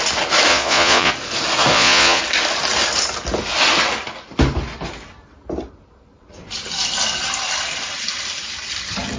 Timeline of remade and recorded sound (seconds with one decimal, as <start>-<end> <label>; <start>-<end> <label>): 0.0-0.5 recorded; 0.5-1.1 remade; 1.1-1.7 recorded; 1.7-2.2 remade; 2.2-9.2 recorded